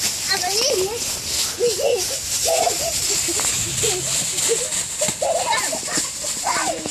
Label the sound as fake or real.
real